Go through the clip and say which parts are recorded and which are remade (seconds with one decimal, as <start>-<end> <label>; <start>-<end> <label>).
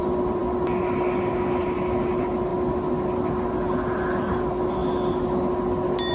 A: 0.0-6.1 recorded